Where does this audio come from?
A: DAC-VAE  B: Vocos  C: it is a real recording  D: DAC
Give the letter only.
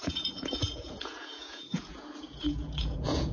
B